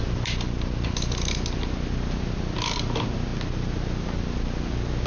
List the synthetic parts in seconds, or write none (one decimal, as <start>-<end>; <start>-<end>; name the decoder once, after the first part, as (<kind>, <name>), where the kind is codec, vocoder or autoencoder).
none